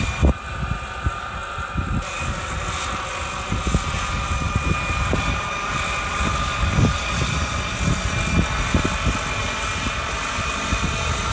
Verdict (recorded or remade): recorded